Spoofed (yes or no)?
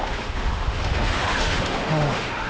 yes